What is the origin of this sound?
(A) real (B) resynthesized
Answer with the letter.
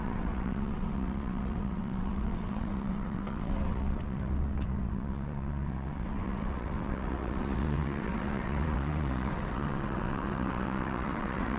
B